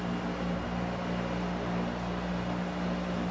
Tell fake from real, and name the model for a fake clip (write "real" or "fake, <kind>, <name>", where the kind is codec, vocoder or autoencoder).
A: real